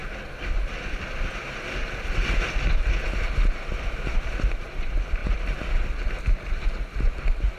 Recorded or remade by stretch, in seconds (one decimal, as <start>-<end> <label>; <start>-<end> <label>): 0.0-7.6 recorded